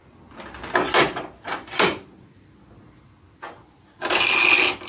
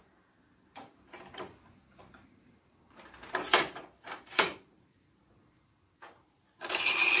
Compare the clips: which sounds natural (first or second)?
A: first